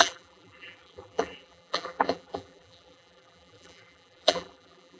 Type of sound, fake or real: fake